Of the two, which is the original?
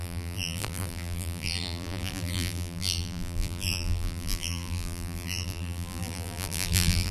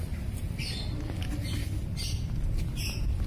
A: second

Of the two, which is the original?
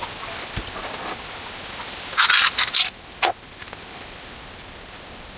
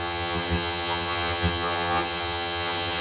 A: first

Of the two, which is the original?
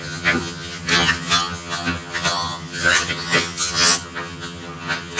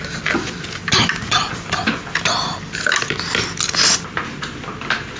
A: second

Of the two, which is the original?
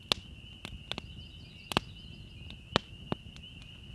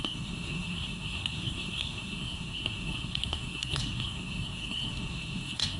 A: first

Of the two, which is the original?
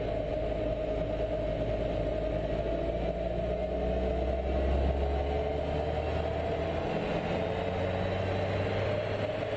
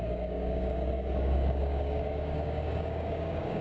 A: first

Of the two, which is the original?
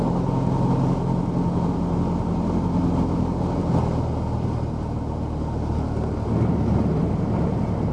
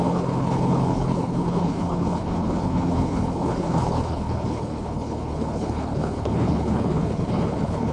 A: first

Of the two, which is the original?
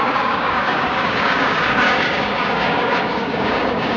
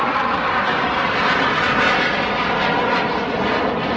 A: second